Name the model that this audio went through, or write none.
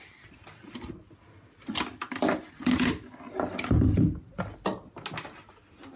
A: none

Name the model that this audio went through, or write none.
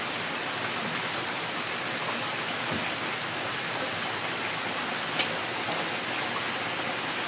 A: none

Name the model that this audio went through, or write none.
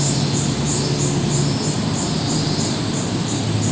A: none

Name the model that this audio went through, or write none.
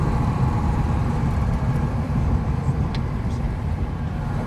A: vocoder, BigVGAN v2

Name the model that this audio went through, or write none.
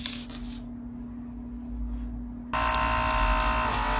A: none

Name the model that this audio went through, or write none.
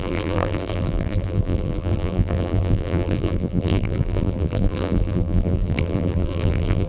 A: vocoder, BigVGAN v2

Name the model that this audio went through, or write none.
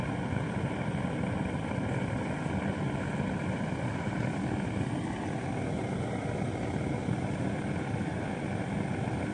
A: none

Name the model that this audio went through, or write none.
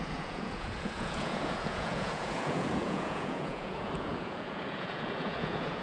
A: vocoder, Vocos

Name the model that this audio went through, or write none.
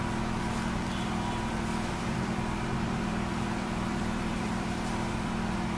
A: vocoder, BigVGAN v2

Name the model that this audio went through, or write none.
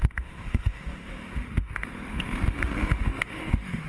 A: autoencoder, DAC-VAE